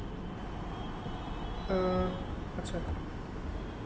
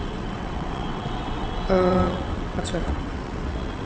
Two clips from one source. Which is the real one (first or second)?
first